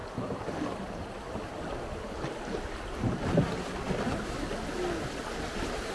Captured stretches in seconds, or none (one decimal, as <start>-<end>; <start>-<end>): 0.0-5.9

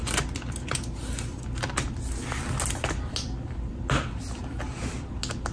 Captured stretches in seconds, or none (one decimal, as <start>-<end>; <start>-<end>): 0.0-5.5

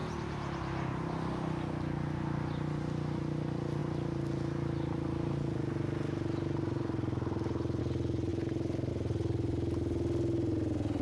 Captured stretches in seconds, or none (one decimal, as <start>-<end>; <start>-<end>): 0.0-11.0

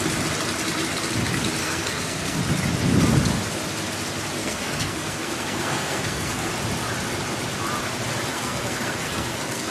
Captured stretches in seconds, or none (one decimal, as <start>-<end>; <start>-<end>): 0.0-1.6; 2.4-4.4; 6.5-8.3

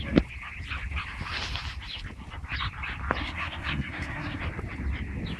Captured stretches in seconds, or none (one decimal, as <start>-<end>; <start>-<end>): 0.0-3.2; 4.4-5.4

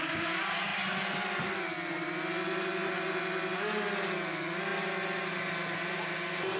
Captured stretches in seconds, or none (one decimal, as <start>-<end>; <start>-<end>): 0.0-6.6

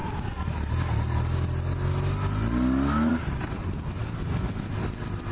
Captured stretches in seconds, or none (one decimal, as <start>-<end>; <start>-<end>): 0.0-5.3